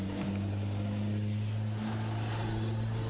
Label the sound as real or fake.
real